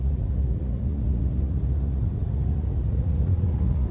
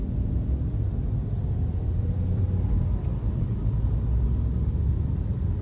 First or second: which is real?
second